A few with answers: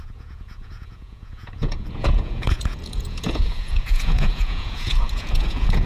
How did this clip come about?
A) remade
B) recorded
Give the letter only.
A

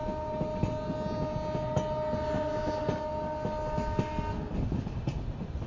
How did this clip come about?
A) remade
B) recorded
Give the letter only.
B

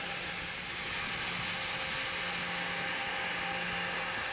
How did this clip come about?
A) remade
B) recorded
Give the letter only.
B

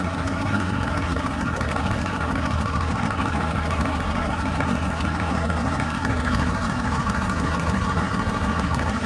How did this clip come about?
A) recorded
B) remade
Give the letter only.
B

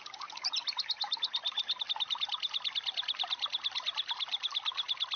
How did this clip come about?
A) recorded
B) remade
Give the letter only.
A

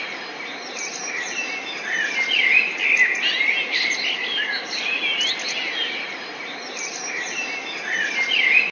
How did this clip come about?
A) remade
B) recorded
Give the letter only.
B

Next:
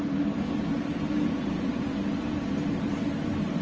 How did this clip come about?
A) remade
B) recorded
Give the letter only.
B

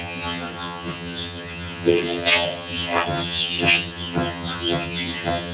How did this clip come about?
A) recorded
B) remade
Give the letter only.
B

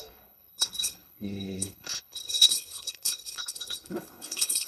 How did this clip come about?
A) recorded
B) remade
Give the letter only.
B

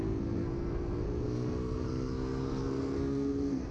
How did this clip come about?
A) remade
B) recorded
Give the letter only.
A